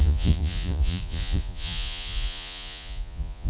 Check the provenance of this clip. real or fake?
fake